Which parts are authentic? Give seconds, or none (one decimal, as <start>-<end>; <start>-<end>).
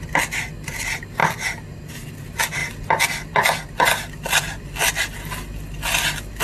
0.0-6.4